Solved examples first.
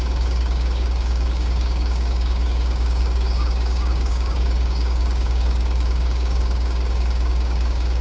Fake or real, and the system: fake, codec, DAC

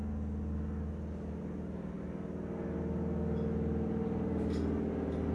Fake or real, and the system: real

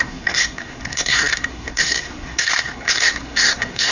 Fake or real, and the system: fake, codec, SNAC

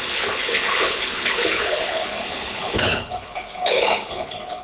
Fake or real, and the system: fake, codec, HILCodec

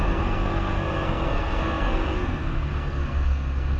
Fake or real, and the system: fake, codec, SNAC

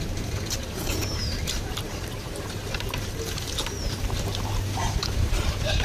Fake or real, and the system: fake, vocoder, BigVGAN v2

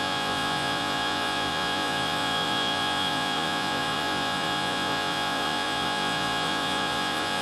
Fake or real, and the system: fake, vocoder, Vocos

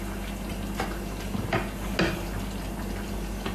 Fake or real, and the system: real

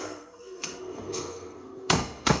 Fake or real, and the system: fake, codec, SNAC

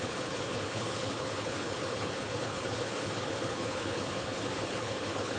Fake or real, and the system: fake, codec, HILCodec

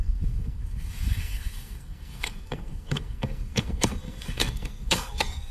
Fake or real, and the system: fake, codec, SNAC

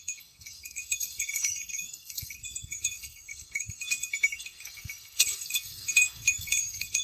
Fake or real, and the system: fake, codec, SNAC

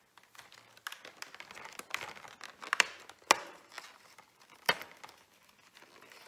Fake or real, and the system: real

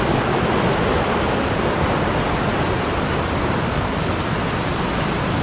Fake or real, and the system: real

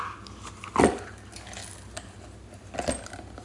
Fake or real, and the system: real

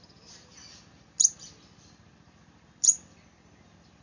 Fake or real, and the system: real